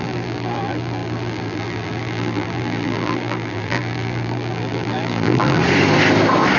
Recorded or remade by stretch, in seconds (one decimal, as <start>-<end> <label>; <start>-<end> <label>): 0.0-5.6 remade; 5.6-6.6 recorded